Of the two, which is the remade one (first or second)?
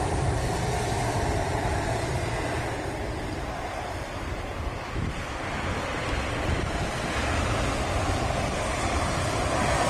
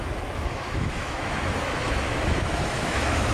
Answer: second